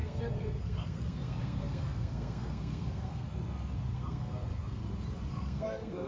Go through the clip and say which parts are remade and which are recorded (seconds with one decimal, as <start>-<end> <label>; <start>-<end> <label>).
0.0-4.8 remade; 4.8-5.3 recorded; 5.3-6.1 remade